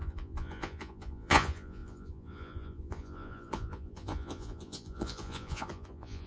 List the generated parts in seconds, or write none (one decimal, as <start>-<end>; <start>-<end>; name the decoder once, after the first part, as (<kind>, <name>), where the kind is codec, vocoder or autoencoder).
0.0-6.3 (vocoder, Vocos)

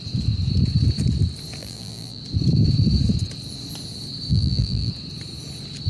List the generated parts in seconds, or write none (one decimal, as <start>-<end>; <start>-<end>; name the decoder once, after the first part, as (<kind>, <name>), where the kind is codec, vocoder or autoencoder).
1.6-2.2 (vocoder, BigVGAN v2); 4.3-4.9